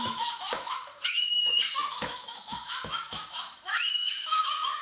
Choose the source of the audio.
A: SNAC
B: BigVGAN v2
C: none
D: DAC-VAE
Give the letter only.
D